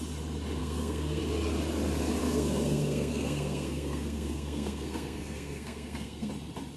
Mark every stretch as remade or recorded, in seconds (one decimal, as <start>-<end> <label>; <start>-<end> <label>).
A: 0.0-0.6 recorded; 0.6-1.2 remade; 1.2-2.2 recorded; 2.2-6.3 remade; 6.3-6.8 recorded

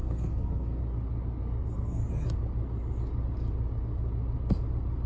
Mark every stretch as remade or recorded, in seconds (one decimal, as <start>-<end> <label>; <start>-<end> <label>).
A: 0.0-0.8 remade; 0.8-1.4 recorded; 1.4-2.0 remade; 2.0-5.1 recorded

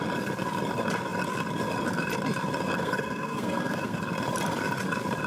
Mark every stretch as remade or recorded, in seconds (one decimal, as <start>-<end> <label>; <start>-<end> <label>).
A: 0.0-2.8 recorded; 2.8-4.0 remade; 4.0-5.3 recorded

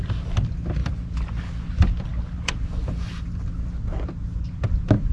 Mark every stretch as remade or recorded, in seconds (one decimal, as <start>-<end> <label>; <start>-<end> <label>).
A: 0.0-5.1 recorded

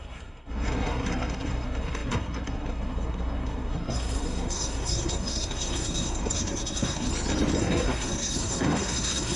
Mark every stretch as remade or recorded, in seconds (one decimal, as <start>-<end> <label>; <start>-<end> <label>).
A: 0.0-7.1 remade; 7.1-7.6 recorded; 7.6-9.4 remade

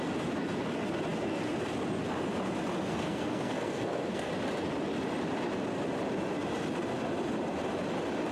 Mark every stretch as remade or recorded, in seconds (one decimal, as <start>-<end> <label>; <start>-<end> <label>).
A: 0.0-2.9 recorded; 2.9-4.3 remade; 4.3-8.3 recorded

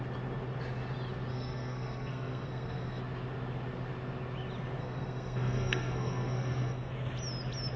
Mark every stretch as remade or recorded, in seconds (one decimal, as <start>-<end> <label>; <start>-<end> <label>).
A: 0.0-1.3 recorded; 1.3-3.0 remade; 3.0-4.8 recorded; 4.8-6.9 remade; 6.9-7.8 recorded

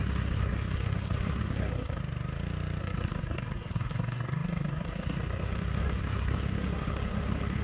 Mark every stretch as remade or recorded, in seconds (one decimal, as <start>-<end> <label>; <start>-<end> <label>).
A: 0.0-2.0 remade; 2.0-2.8 recorded; 2.8-7.6 remade